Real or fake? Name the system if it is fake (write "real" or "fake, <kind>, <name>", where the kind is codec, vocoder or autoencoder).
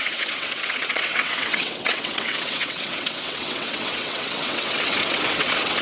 fake, vocoder, WaveNeXt